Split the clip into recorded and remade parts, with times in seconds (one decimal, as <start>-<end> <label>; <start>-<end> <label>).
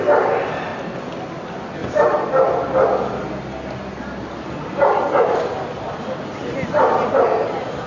0.0-1.8 recorded; 1.8-2.3 remade; 2.3-4.7 recorded; 4.7-7.9 remade